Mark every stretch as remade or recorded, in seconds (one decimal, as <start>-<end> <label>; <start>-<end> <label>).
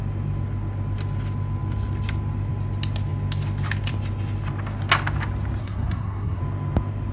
0.0-5.6 recorded; 5.6-6.4 remade; 6.4-7.1 recorded